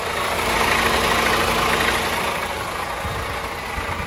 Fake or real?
real